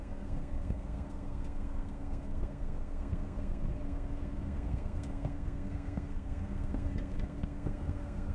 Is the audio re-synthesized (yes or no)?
yes